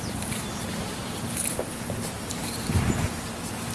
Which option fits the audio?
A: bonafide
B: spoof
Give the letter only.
B